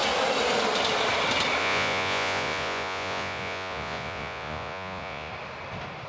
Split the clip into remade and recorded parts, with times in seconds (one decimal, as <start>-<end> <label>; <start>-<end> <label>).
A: 0.0-1.6 recorded; 1.6-5.3 remade; 5.3-6.1 recorded